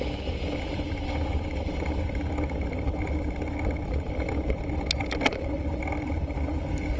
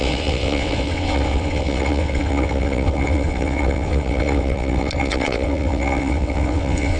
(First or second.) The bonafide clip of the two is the first